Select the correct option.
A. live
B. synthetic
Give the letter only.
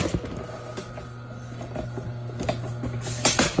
A